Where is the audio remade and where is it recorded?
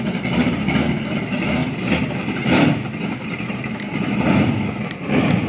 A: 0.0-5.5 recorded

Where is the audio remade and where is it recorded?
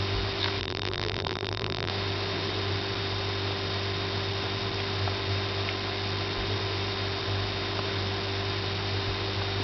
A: 0.0-0.6 recorded; 0.6-1.9 remade; 1.9-9.6 recorded